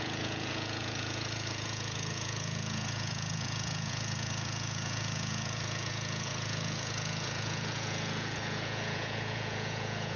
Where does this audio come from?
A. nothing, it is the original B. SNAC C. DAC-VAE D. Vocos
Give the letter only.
D